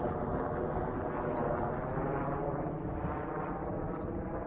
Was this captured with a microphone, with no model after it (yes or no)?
yes